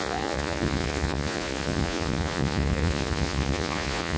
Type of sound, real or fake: fake